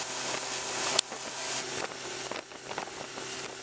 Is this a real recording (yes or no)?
yes